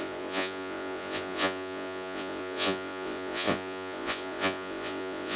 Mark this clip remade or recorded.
remade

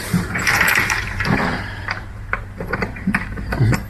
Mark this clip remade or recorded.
remade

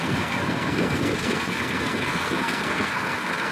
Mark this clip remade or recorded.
remade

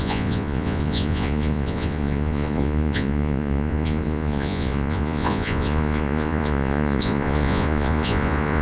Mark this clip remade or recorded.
remade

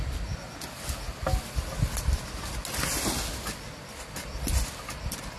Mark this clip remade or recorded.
recorded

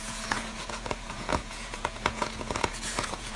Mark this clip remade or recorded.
remade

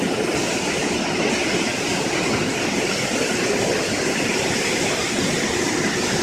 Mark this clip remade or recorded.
recorded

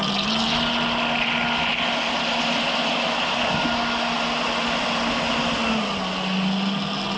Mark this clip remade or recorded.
recorded